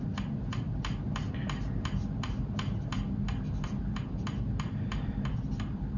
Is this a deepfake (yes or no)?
no